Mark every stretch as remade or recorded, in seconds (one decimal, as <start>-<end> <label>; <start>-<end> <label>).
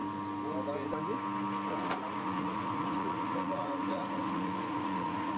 0.0-1.7 recorded; 1.7-5.4 remade